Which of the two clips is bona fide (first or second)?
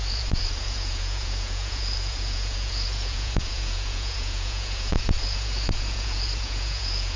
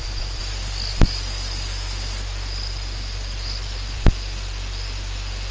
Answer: second